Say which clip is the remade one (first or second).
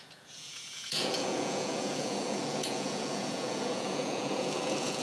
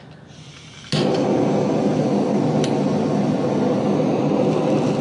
first